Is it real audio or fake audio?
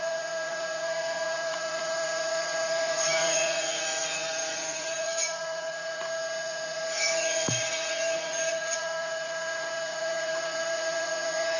fake